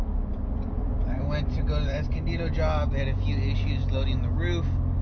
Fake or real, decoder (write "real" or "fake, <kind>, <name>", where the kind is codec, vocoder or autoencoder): real